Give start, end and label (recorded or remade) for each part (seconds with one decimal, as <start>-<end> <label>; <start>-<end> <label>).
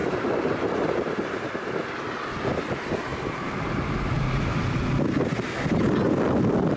0.0-1.4 remade; 1.4-3.1 recorded; 3.1-4.5 remade; 4.5-6.8 recorded